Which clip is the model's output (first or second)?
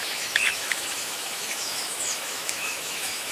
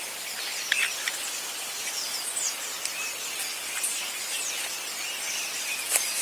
first